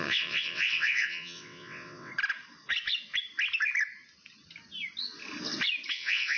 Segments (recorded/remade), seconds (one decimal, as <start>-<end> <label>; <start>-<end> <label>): 0.0-2.1 remade; 2.1-5.9 recorded; 5.9-6.4 remade